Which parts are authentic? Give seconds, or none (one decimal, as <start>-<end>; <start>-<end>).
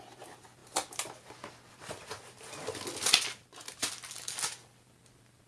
0.0-5.5